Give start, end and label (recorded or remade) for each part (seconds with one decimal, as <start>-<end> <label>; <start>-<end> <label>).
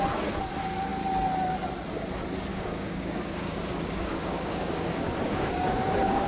0.0-2.5 recorded; 2.5-6.3 remade